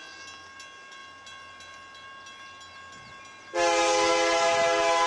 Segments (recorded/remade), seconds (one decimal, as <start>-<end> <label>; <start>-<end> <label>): 0.0-5.1 recorded